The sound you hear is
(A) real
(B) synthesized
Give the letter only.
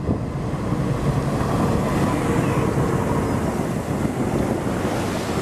A